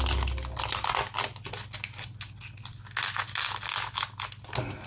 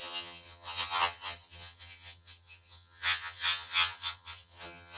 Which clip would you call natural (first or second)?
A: first